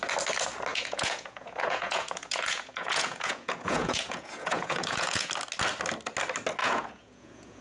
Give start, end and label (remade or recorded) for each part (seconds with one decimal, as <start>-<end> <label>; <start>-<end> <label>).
0.0-0.7 recorded; 0.7-5.3 remade; 5.3-6.6 recorded; 6.6-7.6 remade